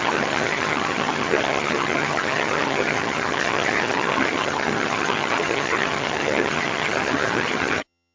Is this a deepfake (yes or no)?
yes